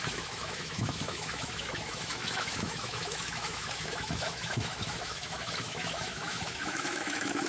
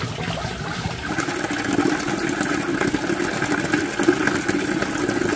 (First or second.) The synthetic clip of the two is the first